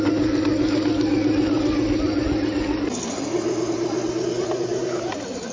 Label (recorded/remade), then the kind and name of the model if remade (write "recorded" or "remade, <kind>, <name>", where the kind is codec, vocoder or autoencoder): recorded